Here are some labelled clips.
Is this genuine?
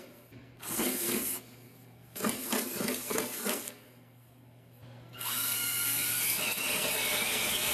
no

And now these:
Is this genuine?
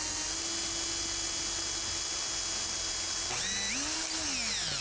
yes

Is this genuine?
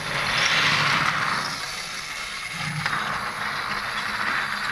yes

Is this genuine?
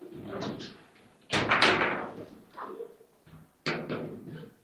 yes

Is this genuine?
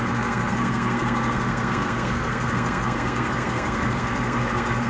no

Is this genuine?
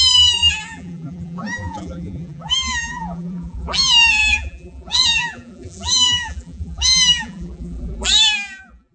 no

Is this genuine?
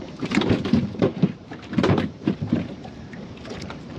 no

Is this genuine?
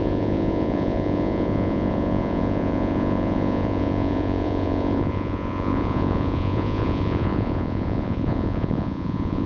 no